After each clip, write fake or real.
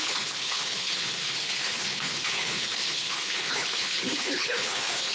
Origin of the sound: fake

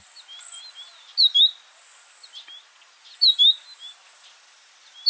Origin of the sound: real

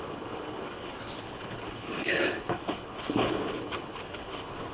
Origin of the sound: fake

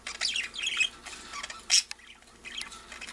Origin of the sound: real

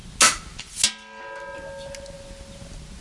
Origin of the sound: real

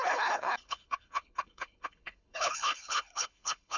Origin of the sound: fake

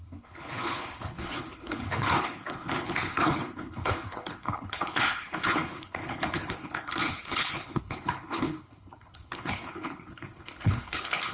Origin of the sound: fake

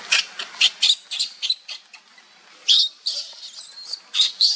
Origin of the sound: real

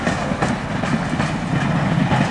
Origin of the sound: real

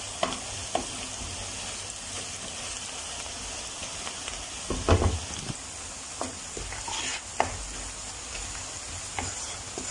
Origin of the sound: real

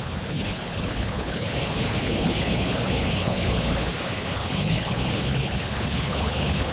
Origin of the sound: fake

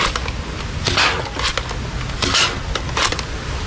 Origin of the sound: real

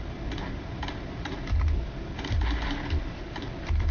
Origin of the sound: real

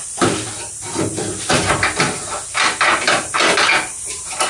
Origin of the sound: real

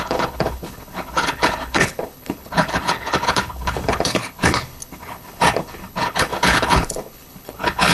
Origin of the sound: fake